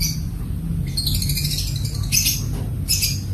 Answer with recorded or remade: recorded